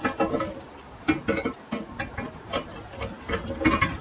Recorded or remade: recorded